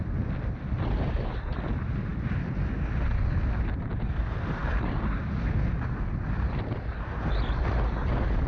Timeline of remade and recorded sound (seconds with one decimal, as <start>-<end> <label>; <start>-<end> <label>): 0.0-8.5 recorded